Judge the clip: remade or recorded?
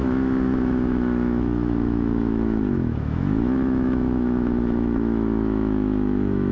remade